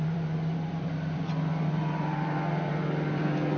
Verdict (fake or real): fake